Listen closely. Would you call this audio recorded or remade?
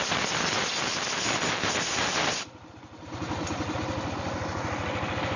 recorded